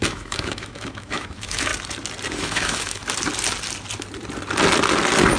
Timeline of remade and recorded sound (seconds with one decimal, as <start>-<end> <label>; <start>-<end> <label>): 0.0-1.7 remade; 1.7-2.3 recorded; 2.3-3.0 remade; 3.0-5.4 recorded